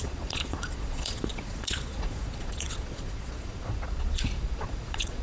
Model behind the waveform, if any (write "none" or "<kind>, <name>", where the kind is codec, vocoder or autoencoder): vocoder, Vocos